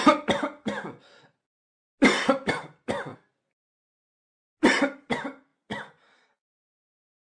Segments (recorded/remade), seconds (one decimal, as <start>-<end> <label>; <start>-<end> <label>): 0.0-7.2 recorded